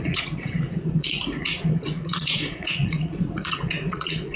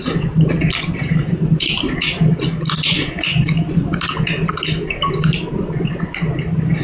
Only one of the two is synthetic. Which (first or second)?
first